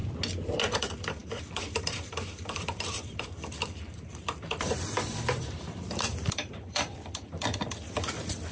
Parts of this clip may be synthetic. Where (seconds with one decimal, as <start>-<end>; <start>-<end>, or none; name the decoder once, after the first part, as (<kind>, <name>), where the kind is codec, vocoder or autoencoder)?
0.6-8.5 (vocoder, BigVGAN v2)